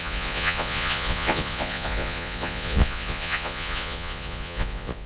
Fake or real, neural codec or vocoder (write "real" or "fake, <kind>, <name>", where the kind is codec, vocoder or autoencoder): fake, vocoder, Vocos